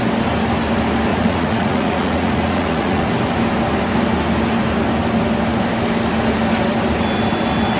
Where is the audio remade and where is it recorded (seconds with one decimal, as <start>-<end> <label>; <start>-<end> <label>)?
0.0-1.1 recorded; 1.1-3.1 remade; 3.1-7.8 recorded